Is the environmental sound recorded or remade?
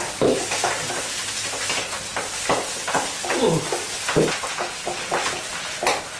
recorded